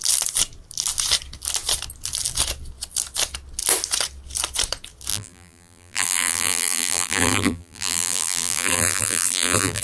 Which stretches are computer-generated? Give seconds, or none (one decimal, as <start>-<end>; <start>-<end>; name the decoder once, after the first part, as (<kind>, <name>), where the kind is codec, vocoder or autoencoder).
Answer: 5.1-9.8 (vocoder, BigVGAN v2)